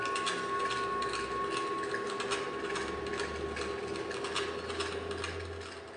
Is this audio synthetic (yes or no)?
no